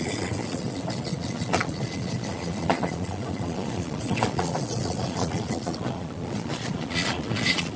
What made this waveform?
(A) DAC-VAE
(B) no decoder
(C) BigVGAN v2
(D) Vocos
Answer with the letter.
D